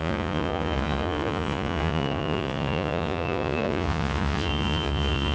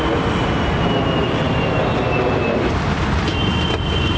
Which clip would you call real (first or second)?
second